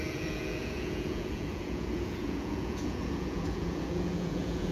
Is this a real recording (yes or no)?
no